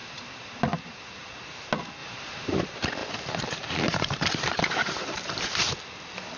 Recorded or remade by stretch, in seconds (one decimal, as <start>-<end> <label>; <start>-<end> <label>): 0.0-2.0 recorded; 2.0-2.6 remade; 2.6-3.0 recorded; 3.0-5.6 remade; 5.6-6.4 recorded

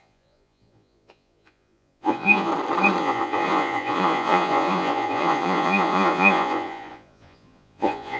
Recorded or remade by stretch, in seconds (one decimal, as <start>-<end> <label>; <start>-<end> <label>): 0.0-2.5 remade; 2.5-3.0 recorded; 3.0-8.2 remade